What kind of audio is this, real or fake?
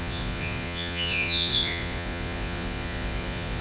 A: fake